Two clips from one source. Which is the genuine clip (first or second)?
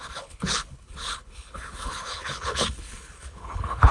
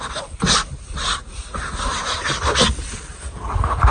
second